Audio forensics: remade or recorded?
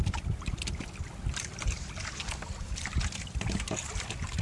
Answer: recorded